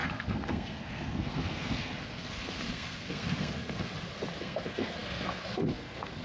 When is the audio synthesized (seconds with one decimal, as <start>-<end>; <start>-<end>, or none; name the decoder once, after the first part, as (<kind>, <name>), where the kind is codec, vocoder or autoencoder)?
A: 0.0-3.9 (codec, SNAC); 4.4-6.2